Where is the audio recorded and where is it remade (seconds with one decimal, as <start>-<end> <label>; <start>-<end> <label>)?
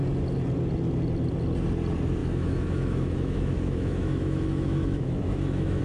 0.0-2.2 recorded; 2.2-5.8 remade